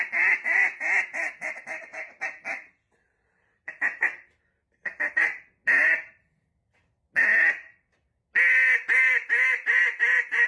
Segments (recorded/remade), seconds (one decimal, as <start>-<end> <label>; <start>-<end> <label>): 0.0-10.5 recorded